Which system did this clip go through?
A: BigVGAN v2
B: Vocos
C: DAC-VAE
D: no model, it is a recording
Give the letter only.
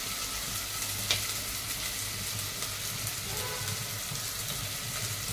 D